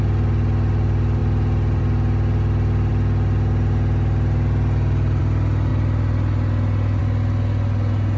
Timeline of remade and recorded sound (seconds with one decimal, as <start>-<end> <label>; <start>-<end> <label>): 0.0-8.2 recorded

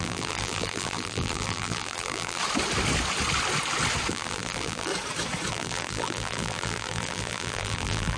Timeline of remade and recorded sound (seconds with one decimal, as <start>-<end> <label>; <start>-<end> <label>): 0.0-2.4 remade; 2.4-4.1 recorded; 4.1-4.9 remade; 4.9-5.5 recorded; 5.5-8.2 remade

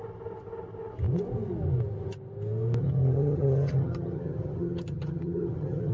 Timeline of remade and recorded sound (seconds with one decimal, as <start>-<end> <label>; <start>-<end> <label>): 0.0-2.8 recorded; 2.8-5.9 remade